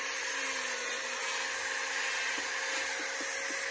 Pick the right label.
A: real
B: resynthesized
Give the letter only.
A